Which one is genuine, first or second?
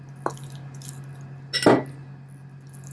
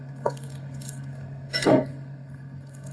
first